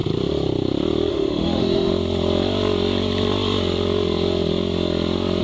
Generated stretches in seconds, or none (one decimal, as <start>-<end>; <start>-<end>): 1.1-1.9